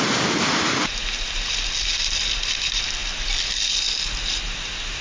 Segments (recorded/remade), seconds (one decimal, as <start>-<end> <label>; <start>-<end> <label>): 0.0-5.0 recorded